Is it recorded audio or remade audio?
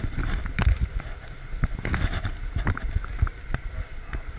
recorded